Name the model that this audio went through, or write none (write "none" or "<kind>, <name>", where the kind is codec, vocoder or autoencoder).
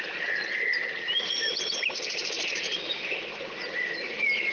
none